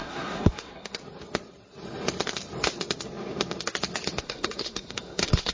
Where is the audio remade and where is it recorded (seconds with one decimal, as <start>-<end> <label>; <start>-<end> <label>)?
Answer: 0.0-1.0 remade; 1.0-4.2 recorded; 4.2-5.5 remade